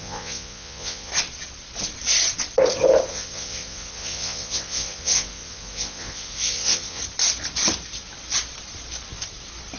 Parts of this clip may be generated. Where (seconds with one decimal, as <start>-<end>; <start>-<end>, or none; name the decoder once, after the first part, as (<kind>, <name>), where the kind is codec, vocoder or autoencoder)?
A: 0.0-1.1 (vocoder, Vocos); 3.1-7.0